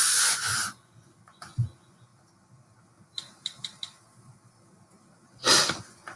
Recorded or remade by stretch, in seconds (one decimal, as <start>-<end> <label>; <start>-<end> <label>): 0.0-2.1 remade; 2.1-5.8 recorded; 5.8-6.2 remade